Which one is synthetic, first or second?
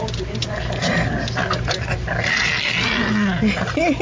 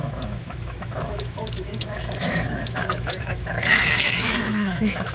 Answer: second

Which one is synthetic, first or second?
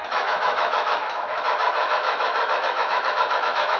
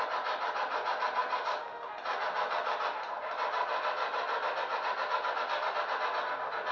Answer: first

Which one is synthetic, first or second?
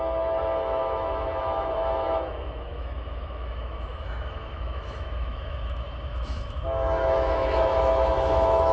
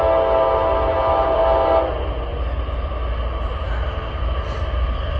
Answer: first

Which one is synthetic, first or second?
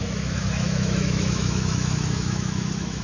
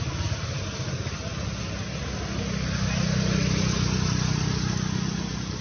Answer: first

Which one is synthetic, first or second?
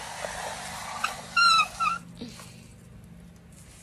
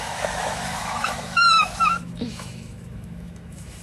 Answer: second